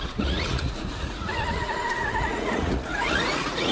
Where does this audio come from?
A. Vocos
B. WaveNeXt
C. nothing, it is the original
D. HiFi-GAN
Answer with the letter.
A